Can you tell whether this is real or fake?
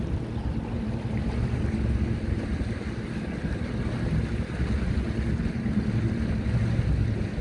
real